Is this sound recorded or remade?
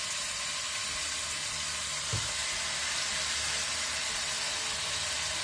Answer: recorded